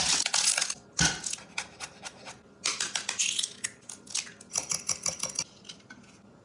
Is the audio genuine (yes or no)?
yes